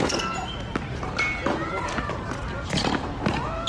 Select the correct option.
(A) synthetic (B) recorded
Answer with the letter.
B